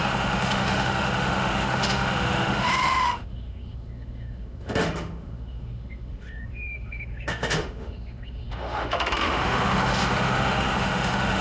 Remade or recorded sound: remade